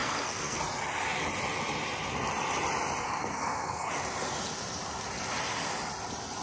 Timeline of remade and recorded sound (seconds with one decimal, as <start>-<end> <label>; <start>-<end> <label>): 0.0-0.6 remade; 0.6-3.0 recorded; 3.0-3.9 remade; 3.9-6.4 recorded